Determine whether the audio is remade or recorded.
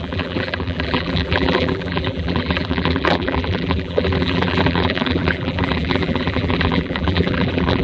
remade